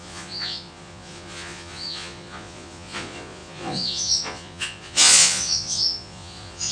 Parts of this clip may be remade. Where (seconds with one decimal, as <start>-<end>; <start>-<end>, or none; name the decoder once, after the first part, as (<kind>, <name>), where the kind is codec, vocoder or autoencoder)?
0.0-6.7 (vocoder, Vocos)